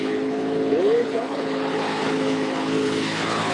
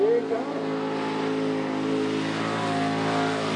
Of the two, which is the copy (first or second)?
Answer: first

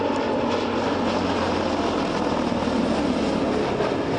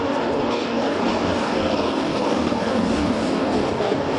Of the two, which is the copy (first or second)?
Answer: second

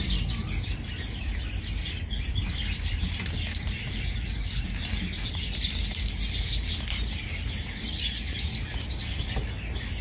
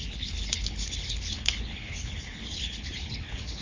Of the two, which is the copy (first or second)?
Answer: second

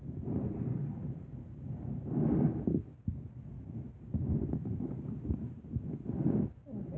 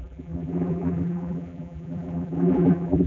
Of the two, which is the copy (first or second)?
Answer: second